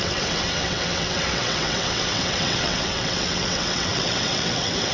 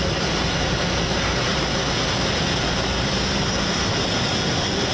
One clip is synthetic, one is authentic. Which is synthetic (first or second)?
first